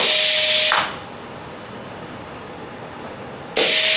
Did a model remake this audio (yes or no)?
no